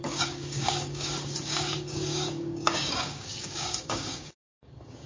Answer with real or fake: fake